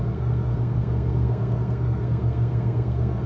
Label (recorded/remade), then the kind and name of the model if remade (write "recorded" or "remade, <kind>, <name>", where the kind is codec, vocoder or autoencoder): remade, codec, SNAC